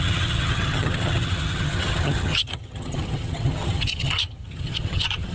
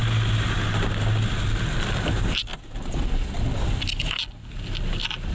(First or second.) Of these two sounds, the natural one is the second